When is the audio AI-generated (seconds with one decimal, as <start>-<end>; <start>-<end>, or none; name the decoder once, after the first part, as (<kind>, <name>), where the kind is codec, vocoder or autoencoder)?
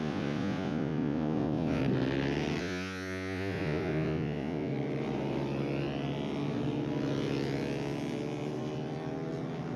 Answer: 0.0-1.8 (vocoder, Vocos); 2.6-4.7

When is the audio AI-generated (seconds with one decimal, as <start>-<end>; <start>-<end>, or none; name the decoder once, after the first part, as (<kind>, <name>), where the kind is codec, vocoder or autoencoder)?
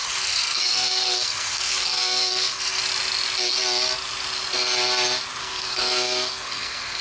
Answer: 0.0-2.8 (codec, SNAC); 5.4-7.0